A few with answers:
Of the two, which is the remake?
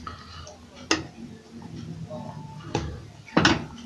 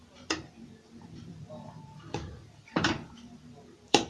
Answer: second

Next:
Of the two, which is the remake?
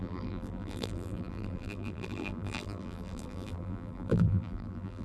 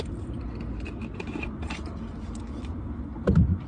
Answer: first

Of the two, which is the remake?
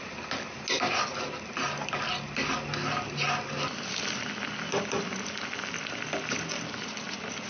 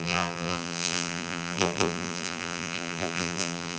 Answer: second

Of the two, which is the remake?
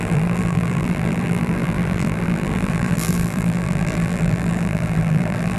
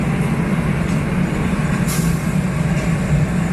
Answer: first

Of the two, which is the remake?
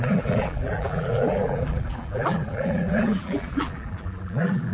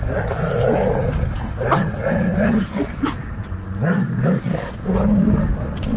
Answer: first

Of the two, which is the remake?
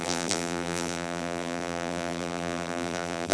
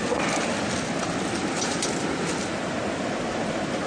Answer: first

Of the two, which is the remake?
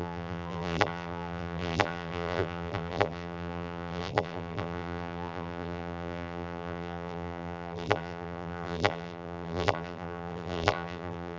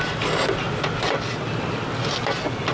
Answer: first